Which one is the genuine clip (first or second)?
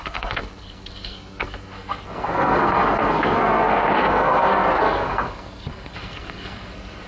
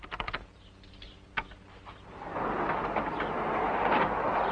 second